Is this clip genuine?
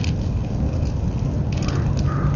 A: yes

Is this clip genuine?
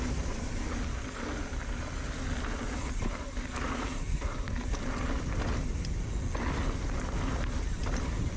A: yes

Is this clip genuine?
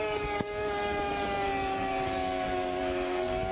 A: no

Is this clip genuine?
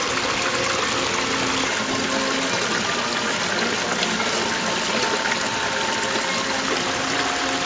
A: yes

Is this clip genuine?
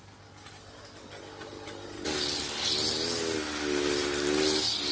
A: yes